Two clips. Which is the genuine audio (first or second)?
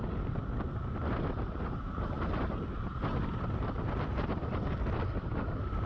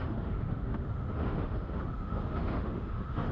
first